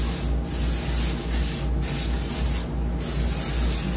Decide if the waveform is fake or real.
real